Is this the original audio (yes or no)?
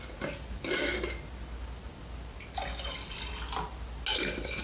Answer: yes